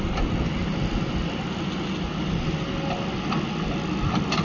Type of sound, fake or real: real